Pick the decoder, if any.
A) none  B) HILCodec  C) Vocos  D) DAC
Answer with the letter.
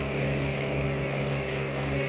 D